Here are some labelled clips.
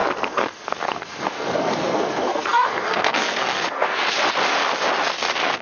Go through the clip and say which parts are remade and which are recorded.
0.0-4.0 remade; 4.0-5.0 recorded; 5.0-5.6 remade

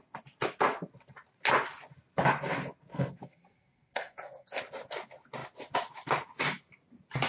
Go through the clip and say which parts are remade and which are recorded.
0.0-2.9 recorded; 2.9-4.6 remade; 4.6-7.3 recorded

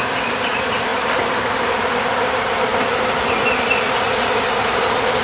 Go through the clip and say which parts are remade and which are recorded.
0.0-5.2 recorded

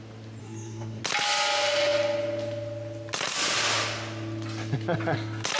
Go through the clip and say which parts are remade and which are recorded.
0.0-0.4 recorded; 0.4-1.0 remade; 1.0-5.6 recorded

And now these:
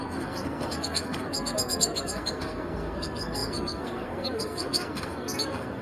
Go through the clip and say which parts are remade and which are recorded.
0.0-5.8 remade

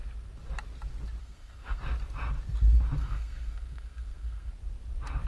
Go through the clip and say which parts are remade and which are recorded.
0.0-1.2 recorded; 1.2-1.8 remade; 1.8-3.0 recorded; 3.0-4.5 remade; 4.5-5.3 recorded

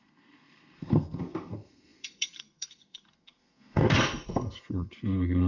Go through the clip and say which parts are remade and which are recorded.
0.0-5.5 remade

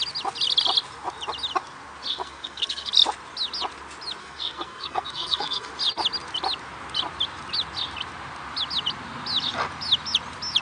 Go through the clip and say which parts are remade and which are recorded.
0.0-2.1 recorded; 2.1-2.9 remade; 2.9-4.2 recorded; 4.2-5.7 remade; 5.7-10.6 recorded